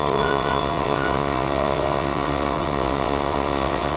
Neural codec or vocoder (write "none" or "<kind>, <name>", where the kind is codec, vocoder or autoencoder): vocoder, WaveNeXt